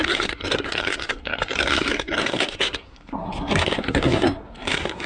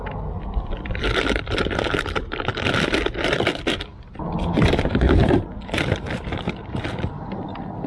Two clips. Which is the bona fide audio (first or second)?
second